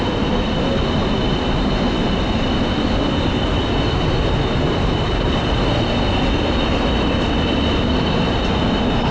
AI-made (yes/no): no